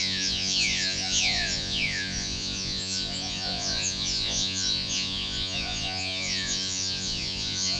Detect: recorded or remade remade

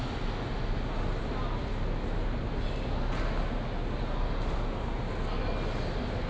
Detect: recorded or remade recorded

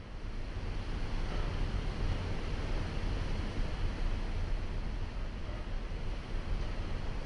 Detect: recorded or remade recorded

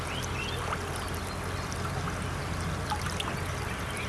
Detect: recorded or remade recorded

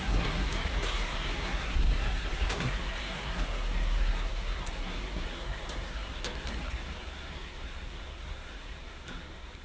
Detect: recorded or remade remade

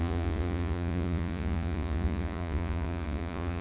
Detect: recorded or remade remade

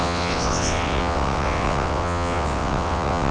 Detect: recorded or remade remade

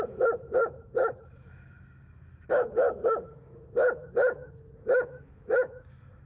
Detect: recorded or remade remade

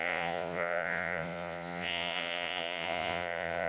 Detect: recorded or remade remade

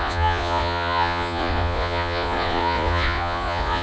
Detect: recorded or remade remade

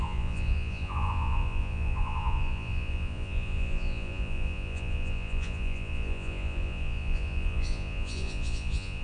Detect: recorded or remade remade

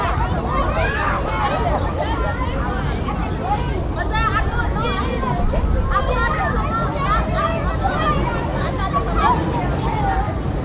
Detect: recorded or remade recorded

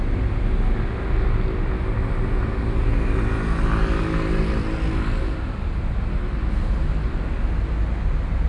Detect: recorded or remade recorded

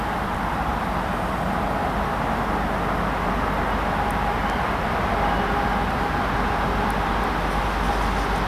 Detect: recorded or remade recorded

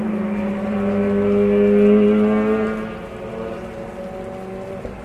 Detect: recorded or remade recorded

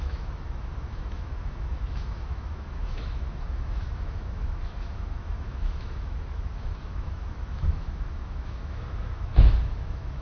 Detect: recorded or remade remade